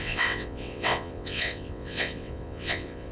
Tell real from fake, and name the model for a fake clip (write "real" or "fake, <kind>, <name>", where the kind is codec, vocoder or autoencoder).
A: fake, vocoder, WaveNeXt